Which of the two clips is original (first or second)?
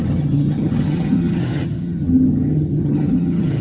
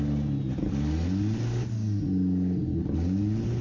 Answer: second